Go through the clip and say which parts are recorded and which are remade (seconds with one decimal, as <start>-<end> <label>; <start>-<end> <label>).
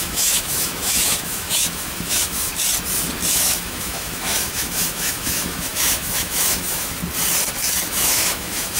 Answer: 0.0-2.5 remade; 2.5-3.3 recorded; 3.3-7.0 remade; 7.0-7.9 recorded; 7.9-8.8 remade